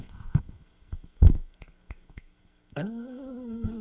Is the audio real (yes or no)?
no